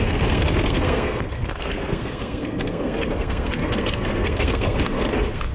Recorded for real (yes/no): no